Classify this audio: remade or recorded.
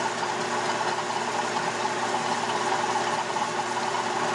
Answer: recorded